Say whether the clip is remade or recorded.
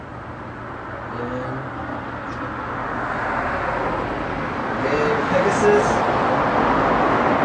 recorded